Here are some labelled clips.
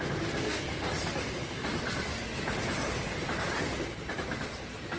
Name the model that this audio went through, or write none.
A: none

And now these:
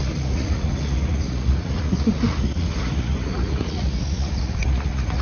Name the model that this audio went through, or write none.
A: vocoder, Vocos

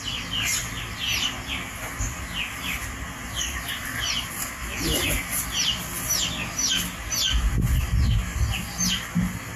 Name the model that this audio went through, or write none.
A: none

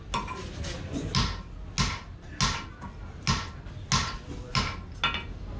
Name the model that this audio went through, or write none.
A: none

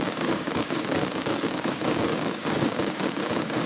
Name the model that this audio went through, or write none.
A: codec, DAC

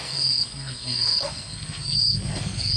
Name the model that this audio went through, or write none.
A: codec, SNAC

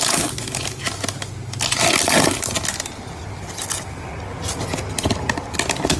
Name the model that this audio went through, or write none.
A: none